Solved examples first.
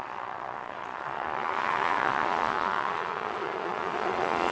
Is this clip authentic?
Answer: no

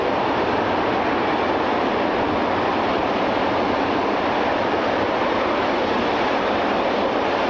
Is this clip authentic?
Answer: no